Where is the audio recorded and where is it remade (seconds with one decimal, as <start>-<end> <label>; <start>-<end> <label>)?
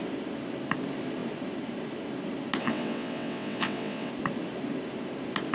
0.0-2.6 recorded; 2.6-4.1 remade; 4.1-5.5 recorded